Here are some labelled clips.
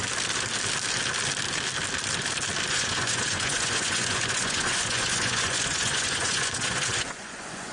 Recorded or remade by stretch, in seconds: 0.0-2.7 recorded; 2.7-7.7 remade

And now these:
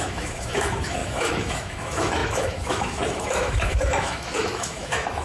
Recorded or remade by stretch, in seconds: 0.0-5.2 remade

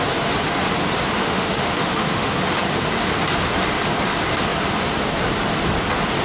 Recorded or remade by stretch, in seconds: 0.0-1.2 recorded; 1.2-2.3 remade; 2.3-6.2 recorded

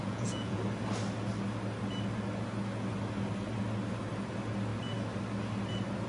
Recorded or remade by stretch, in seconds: 0.0-0.6 remade; 0.6-6.1 recorded

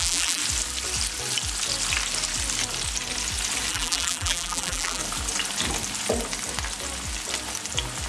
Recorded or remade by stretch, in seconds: 0.0-0.4 remade; 0.4-3.7 recorded; 3.7-5.0 remade; 5.0-8.1 recorded